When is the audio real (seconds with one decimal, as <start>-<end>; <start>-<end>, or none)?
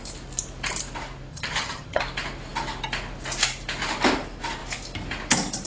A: 0.0-1.3; 2.0-5.7